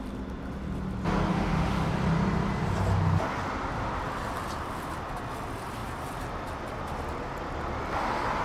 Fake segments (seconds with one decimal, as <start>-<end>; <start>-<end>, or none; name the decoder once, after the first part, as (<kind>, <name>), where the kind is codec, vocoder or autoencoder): 1.3-1.9 (autoencoder, DAC-VAE)